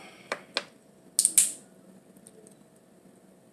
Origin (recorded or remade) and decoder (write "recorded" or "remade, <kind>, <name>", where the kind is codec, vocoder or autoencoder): recorded